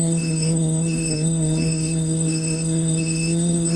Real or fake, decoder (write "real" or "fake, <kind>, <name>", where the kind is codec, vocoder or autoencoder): fake, codec, SNAC